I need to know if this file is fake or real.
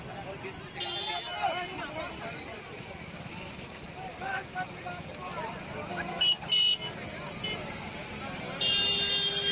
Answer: real